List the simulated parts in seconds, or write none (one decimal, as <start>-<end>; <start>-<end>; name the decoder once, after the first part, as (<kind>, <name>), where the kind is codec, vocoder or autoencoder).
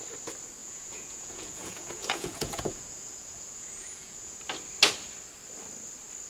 0.6-4.4 (vocoder, Vocos)